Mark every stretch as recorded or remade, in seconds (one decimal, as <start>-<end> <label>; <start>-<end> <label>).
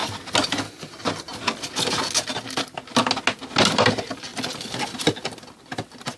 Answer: 0.0-6.2 recorded